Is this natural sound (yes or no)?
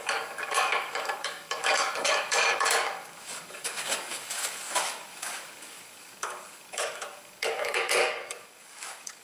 no